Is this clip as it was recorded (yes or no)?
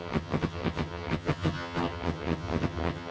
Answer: no